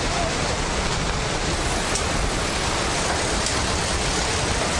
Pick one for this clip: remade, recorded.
recorded